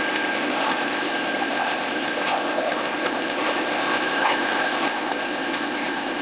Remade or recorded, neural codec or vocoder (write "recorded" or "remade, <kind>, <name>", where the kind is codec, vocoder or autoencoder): remade, codec, ZipCodec